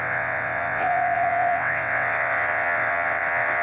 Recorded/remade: remade